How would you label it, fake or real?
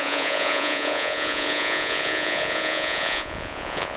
fake